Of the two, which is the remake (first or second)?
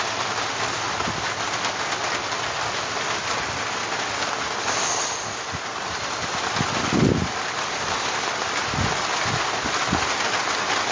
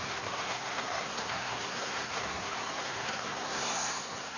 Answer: second